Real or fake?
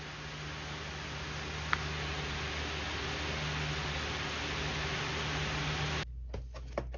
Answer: real